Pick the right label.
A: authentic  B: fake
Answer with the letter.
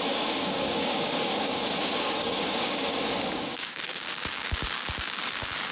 B